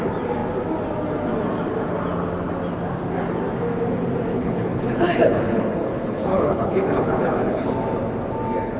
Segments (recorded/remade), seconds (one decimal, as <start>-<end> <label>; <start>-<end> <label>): 0.0-4.3 recorded; 4.3-7.7 remade; 7.7-8.8 recorded

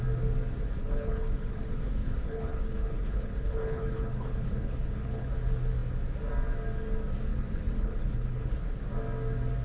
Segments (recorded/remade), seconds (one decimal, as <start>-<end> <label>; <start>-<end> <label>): 0.0-0.8 recorded; 0.8-5.3 remade; 5.3-7.3 recorded; 7.3-8.8 remade; 8.8-9.6 recorded

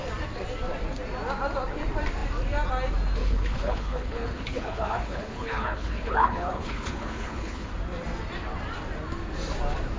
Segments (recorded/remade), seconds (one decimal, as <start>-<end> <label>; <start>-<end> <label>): 0.0-3.2 recorded; 3.2-7.7 remade; 7.7-10.0 recorded

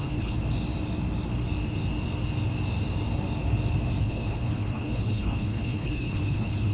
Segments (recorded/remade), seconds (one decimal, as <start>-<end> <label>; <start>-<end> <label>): 0.0-0.4 remade; 0.4-4.0 recorded; 4.0-6.7 remade

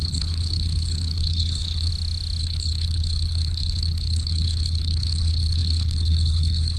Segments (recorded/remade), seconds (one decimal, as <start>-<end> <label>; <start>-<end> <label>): 0.0-1.9 remade; 1.9-2.4 recorded; 2.4-6.8 remade

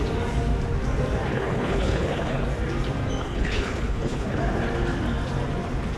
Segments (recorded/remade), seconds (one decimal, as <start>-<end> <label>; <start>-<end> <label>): 0.0-1.3 recorded; 1.3-2.4 remade; 2.4-3.2 recorded; 3.2-4.4 remade; 4.4-6.0 recorded